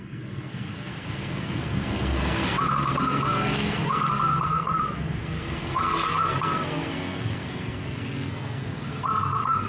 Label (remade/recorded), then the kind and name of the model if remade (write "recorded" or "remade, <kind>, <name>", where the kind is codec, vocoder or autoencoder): remade, codec, SNAC